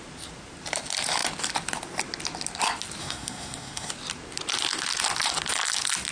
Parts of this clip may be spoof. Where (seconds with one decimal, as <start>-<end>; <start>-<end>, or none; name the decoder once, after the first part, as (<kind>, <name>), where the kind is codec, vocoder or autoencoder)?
3.0-3.9 (codec, SNAC)